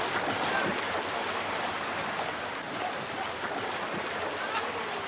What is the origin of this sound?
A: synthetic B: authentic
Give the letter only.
B